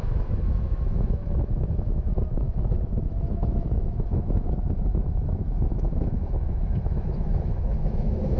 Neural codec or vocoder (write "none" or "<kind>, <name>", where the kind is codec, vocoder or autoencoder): autoencoder, DAC-VAE